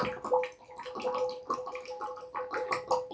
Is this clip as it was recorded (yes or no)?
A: yes